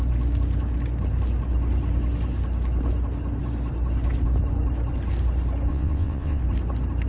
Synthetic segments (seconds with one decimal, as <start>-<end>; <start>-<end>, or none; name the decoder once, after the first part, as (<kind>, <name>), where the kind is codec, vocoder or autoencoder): 5.7-6.4 (vocoder, WaveNeXt)